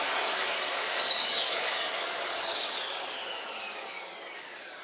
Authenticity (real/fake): fake